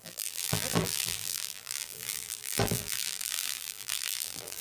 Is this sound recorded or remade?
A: remade